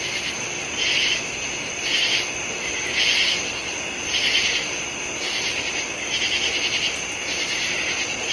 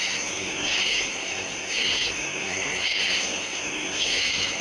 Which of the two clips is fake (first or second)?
second